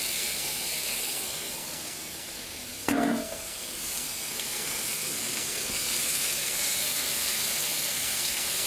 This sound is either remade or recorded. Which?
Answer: remade